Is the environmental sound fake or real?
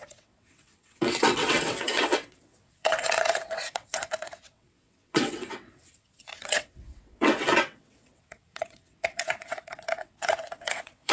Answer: fake